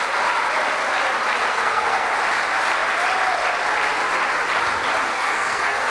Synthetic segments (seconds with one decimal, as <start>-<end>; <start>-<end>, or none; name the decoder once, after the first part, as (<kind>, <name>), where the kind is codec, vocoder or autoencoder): 1.5-2.1 (codec, SNAC); 5.1-5.9